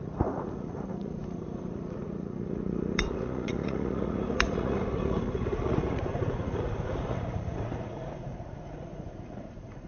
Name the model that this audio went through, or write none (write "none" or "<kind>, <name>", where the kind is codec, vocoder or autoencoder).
vocoder, Vocos